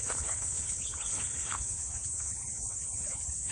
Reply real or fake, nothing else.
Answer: fake